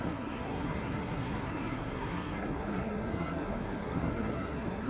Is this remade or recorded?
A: remade